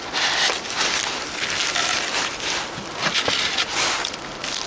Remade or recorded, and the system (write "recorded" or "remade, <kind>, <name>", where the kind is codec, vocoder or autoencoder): recorded